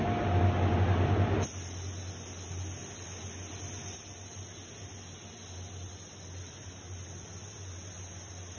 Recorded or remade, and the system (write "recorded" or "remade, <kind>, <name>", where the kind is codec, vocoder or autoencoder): recorded